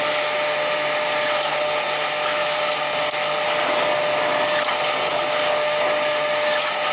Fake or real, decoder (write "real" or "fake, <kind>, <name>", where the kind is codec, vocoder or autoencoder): real